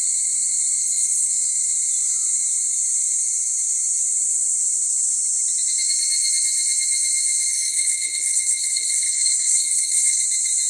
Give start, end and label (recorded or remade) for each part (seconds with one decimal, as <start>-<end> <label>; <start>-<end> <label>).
0.0-0.8 recorded; 0.8-1.3 remade; 1.3-7.5 recorded; 7.5-10.2 remade; 10.2-10.7 recorded